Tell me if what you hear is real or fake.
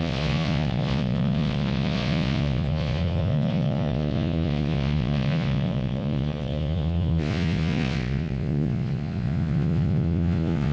fake